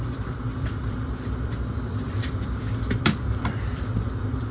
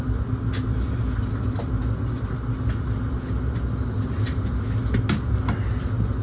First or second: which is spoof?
first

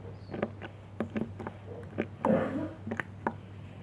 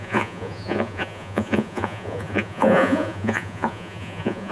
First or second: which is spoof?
second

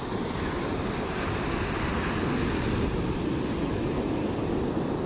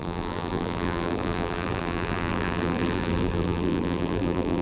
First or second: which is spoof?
second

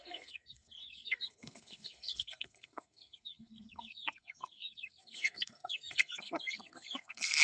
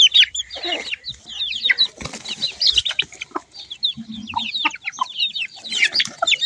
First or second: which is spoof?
first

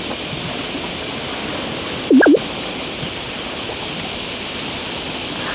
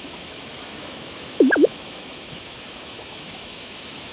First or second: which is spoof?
second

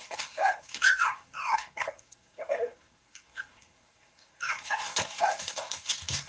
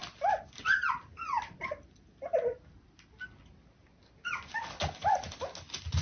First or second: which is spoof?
first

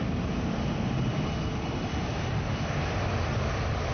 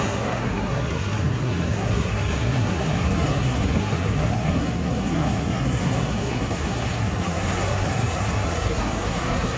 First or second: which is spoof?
second